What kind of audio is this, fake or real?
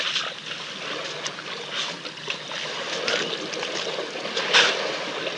real